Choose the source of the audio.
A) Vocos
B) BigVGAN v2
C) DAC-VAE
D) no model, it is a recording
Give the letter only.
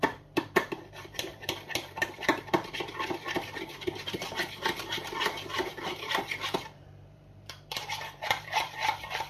B